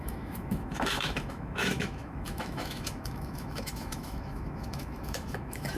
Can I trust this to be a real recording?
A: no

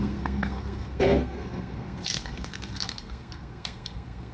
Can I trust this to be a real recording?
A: no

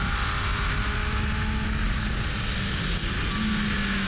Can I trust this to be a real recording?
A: yes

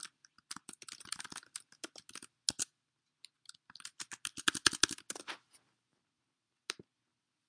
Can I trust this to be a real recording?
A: yes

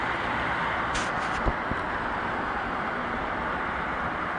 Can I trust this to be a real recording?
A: no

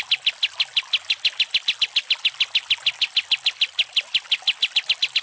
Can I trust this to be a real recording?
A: yes